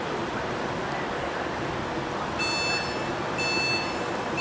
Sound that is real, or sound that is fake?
real